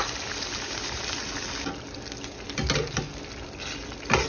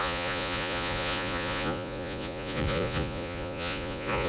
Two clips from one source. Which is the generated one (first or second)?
second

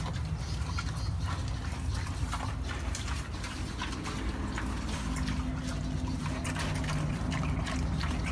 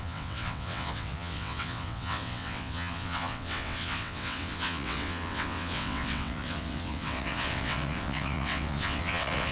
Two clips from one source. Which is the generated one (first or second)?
second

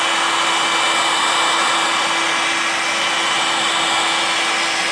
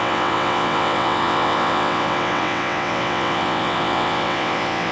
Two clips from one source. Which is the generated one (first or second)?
second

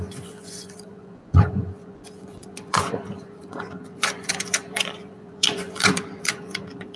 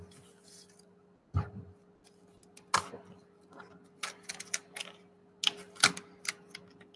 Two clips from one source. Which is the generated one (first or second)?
first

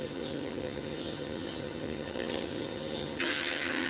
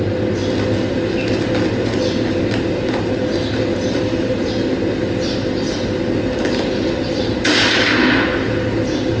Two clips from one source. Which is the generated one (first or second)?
first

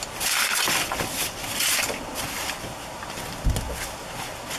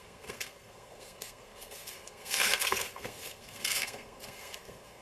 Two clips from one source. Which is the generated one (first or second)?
second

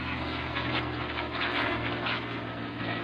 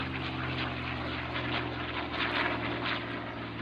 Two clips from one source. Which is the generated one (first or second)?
first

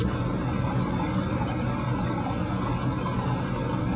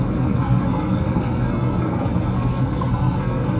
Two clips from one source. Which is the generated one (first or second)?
second